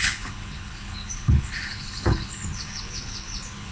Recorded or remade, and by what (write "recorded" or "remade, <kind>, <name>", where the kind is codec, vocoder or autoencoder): remade, codec, HILCodec